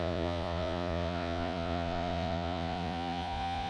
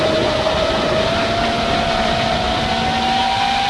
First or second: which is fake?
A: first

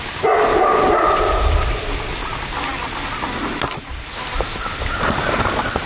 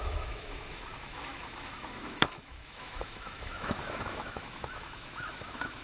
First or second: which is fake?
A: second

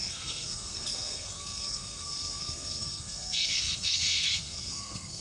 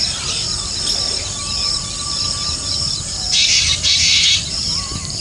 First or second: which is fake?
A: first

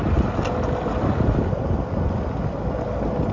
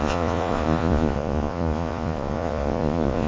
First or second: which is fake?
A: second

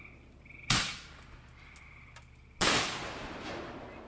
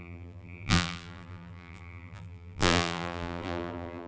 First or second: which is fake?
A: second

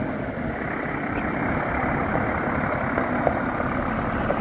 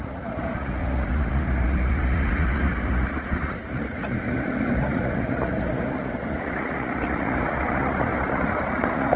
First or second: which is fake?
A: second